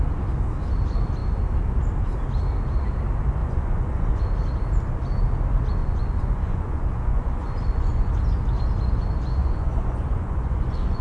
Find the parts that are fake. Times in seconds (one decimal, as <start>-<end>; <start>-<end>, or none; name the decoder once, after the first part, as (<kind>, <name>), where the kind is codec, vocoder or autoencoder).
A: 3.4-4.2 (vocoder, Vocos); 5.8-8.1; 9.4-11.0